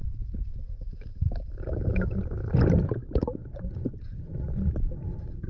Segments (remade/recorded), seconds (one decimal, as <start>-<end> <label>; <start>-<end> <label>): 0.0-2.5 remade; 2.5-5.5 recorded